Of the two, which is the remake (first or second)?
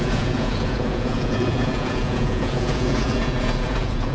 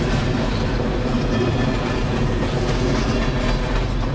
first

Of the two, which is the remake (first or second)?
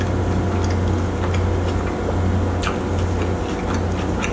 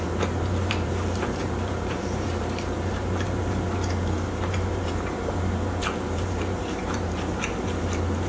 second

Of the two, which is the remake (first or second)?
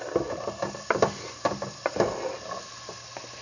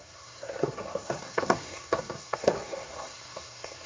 second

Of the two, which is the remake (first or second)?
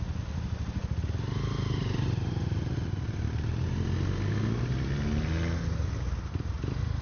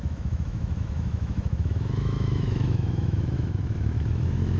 second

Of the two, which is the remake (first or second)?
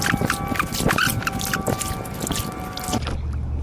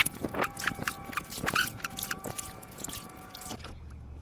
second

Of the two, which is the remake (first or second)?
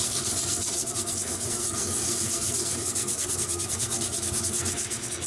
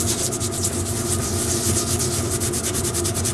first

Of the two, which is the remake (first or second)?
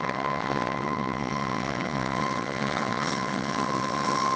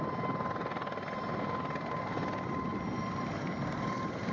first